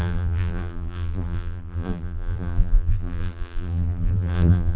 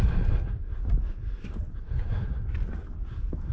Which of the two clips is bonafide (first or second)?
second